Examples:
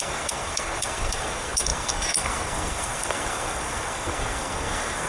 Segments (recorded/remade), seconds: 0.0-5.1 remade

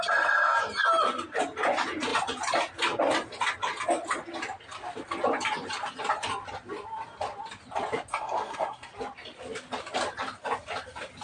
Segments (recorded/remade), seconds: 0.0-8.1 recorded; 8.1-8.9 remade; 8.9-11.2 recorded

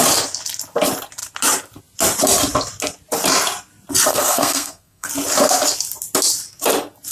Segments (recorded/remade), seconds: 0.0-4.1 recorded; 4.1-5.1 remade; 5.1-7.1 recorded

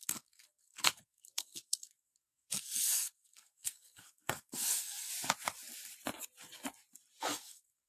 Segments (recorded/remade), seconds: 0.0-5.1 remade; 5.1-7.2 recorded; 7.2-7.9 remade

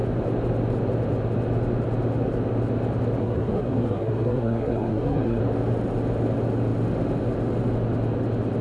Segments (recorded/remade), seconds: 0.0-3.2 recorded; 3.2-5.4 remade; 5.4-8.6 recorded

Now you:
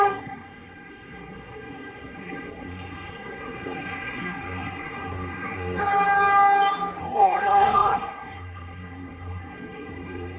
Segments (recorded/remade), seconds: 0.0-5.8 remade; 5.8-7.0 recorded; 7.0-10.4 remade

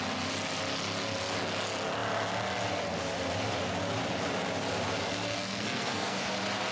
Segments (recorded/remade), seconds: 0.0-5.1 recorded; 5.1-6.3 remade; 6.3-6.7 recorded